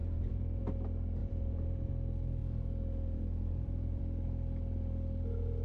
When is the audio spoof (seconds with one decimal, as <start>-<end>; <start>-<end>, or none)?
0.0-0.6; 1.2-1.9; 2.4-4.0